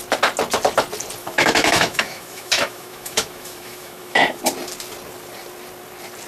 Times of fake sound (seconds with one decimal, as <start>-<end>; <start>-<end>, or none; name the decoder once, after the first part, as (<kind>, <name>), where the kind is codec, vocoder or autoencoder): 1.2-4.4 (autoencoder, DAC-VAE)